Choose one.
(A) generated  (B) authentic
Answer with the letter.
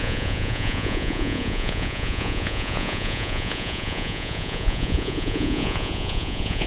A